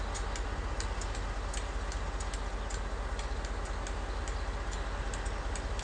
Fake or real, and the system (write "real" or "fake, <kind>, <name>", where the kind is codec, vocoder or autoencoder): real